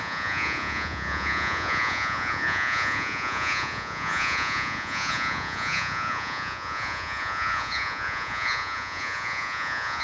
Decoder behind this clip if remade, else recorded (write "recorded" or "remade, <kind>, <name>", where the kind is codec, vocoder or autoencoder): remade, vocoder, Vocos